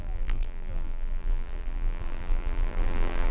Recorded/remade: remade